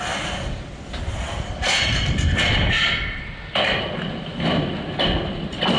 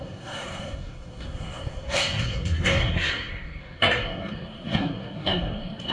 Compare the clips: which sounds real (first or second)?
first